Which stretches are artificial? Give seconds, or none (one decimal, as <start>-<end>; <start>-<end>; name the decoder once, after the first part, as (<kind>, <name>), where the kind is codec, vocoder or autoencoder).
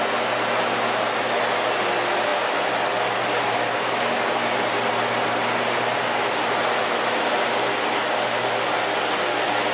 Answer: none